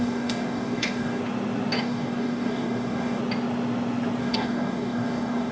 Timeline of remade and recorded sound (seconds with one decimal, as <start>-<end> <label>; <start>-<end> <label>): 0.0-1.2 remade; 1.2-1.8 recorded; 1.8-3.2 remade; 3.2-4.2 recorded; 4.2-5.5 remade